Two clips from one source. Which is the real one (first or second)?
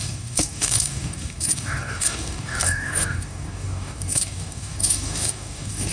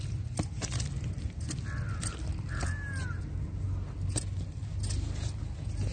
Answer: second